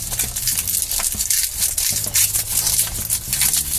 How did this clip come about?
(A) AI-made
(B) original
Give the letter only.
B